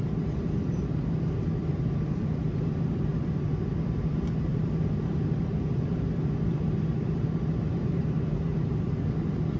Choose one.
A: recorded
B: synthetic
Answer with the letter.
B